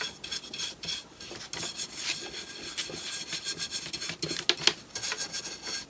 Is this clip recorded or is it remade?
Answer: recorded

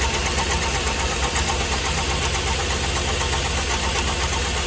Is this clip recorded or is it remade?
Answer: recorded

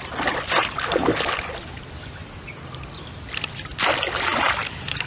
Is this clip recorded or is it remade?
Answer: recorded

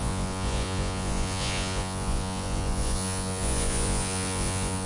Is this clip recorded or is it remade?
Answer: remade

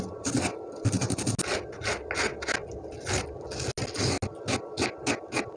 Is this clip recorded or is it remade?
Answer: recorded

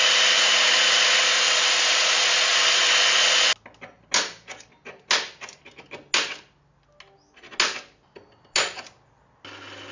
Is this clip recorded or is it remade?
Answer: recorded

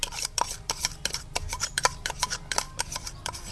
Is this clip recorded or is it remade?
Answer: remade